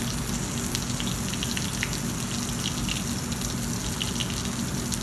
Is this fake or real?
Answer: real